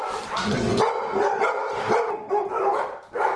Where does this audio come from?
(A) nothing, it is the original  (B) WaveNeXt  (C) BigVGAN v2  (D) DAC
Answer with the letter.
C